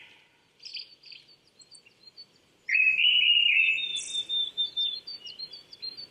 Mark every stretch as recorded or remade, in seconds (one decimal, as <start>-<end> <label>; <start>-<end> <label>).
0.0-3.9 remade; 3.9-4.6 recorded; 4.6-5.1 remade; 5.1-6.1 recorded